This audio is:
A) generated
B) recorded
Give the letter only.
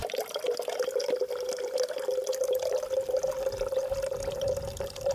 B